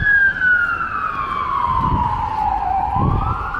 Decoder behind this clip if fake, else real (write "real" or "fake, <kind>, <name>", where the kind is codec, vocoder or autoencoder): real